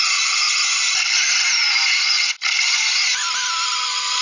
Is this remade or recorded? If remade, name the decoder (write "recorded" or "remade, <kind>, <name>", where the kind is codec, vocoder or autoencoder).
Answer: recorded